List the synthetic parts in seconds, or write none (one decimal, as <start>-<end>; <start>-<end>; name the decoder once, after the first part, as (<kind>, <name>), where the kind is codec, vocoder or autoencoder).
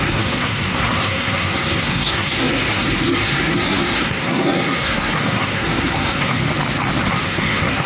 0.0-6.4 (codec, SNAC); 7.1-7.9